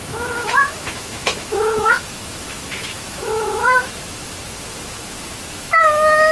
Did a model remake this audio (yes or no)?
yes